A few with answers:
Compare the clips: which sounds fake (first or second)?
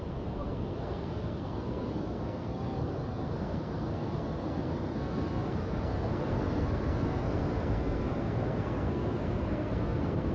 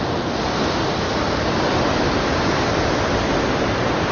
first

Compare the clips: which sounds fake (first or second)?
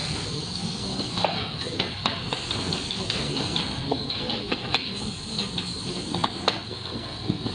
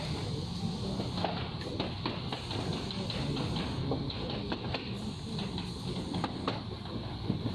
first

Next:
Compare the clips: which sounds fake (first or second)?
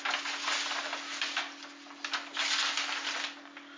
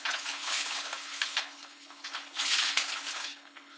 second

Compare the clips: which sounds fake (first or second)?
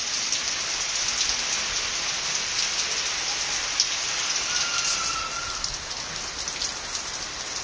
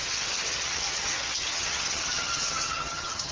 second